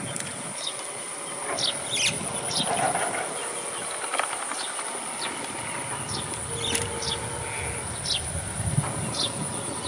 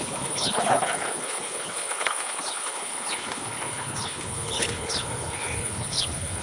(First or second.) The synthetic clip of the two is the second